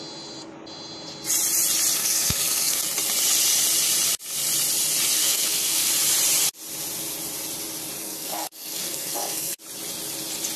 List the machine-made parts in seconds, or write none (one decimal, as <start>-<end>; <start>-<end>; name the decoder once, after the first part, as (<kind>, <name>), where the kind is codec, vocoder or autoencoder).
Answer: 2.0-2.8 (codec, SNAC); 5.2-5.9; 8.0-9.6